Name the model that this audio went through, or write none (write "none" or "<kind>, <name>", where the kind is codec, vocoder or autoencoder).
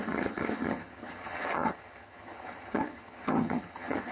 vocoder, HiFi-GAN